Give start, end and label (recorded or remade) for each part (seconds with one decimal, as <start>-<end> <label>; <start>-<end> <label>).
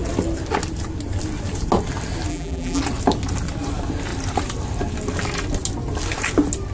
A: 0.0-2.3 recorded; 2.3-2.8 remade; 2.8-6.7 recorded